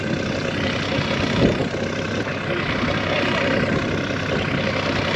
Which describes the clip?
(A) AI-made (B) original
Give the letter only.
B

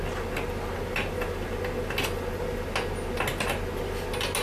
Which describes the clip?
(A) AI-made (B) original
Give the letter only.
B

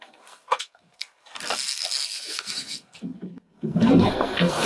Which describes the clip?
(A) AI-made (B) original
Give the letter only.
A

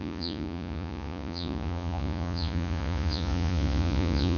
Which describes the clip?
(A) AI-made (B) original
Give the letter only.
A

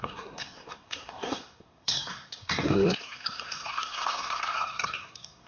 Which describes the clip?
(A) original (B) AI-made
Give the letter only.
B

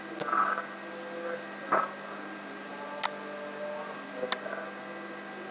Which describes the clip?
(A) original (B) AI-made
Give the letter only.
A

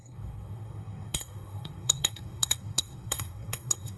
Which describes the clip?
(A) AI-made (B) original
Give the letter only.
A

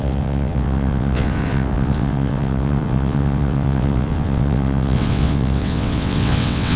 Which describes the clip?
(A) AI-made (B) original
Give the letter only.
A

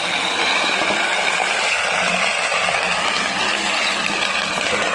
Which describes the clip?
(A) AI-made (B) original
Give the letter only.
B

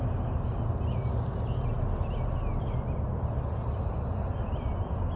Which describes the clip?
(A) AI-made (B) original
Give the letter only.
B